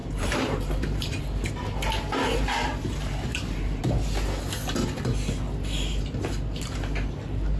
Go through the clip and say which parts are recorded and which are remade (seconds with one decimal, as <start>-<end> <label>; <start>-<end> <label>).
0.0-1.2 remade; 1.2-2.7 recorded; 2.7-3.8 remade; 3.8-7.6 recorded